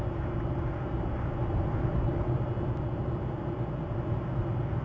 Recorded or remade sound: recorded